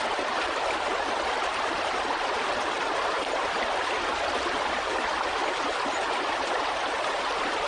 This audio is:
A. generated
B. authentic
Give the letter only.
B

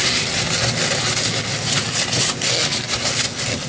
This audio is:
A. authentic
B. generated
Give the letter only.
A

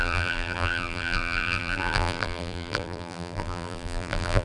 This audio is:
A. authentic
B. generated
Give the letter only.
B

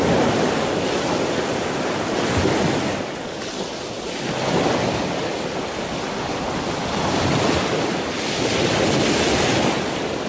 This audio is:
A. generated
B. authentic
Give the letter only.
B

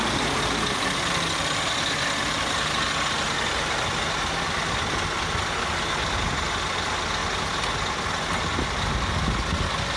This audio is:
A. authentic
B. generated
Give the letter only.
A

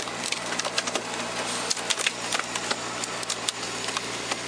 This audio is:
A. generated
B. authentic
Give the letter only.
B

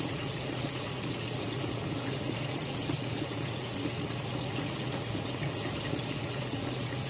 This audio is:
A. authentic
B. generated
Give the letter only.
B